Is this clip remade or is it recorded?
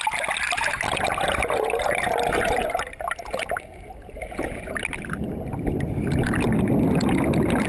recorded